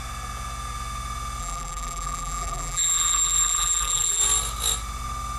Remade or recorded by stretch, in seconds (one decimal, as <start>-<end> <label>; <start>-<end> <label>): 0.0-1.4 recorded; 1.4-4.2 remade; 4.2-5.4 recorded